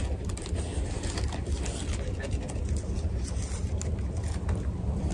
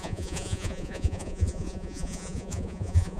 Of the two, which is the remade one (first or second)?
second